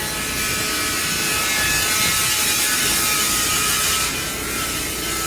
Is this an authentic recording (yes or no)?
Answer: yes